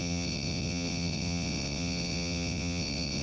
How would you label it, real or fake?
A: fake